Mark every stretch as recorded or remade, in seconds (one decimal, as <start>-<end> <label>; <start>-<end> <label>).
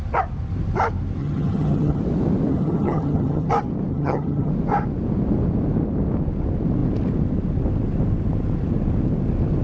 0.0-1.2 recorded; 1.2-2.0 remade; 2.0-2.5 recorded; 2.5-3.5 remade; 3.5-3.9 recorded; 3.9-4.5 remade; 4.5-9.6 recorded